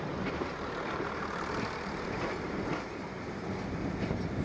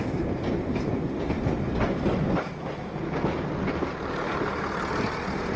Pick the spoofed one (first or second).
first